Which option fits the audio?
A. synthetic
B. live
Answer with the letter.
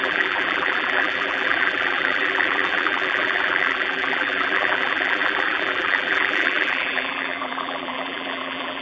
A